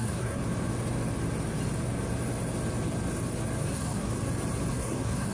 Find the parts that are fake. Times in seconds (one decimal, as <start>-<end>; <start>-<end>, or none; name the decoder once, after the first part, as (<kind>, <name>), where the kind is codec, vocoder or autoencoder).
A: 0.0-0.4 (codec, SNAC); 3.6-4.1; 4.7-5.3